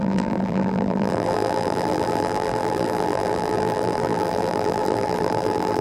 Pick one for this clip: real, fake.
fake